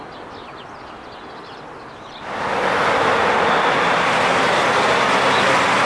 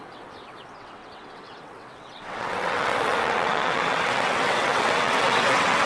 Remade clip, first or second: second